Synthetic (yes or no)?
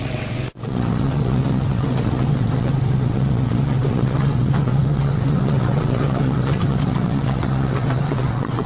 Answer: yes